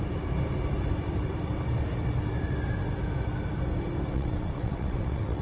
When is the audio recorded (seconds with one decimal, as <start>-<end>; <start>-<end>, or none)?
0.0-4.1